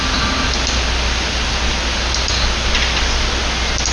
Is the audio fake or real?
real